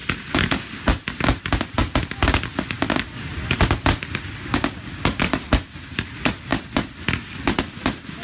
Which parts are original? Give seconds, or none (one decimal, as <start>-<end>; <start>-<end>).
0.0-8.2